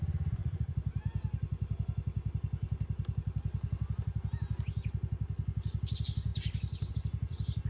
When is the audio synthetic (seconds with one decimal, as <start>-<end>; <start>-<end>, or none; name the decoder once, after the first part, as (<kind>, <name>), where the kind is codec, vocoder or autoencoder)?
none